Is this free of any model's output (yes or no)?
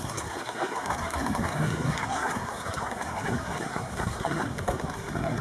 no